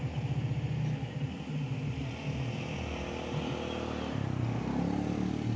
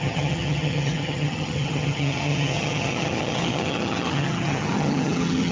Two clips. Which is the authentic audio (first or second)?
first